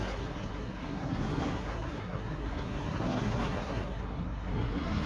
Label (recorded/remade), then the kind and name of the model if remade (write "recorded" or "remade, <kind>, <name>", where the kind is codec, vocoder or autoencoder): remade, codec, SNAC